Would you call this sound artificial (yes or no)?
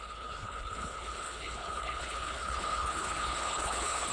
yes